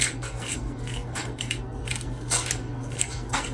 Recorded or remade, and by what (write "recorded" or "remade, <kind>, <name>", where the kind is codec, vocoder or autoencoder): remade, codec, SNAC